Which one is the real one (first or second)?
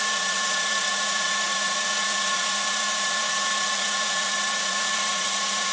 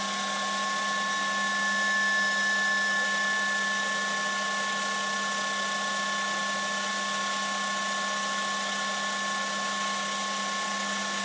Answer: second